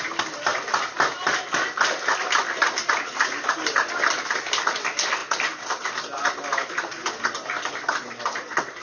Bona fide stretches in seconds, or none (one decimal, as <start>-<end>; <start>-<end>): 0.0-8.8